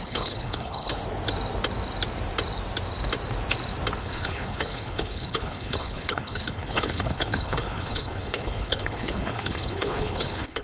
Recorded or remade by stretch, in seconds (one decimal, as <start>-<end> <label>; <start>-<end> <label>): 0.0-1.0 remade; 1.0-4.0 recorded; 4.0-10.6 remade